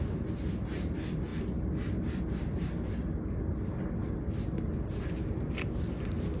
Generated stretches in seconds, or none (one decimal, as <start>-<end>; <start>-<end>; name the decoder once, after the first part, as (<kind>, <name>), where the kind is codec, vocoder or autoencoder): none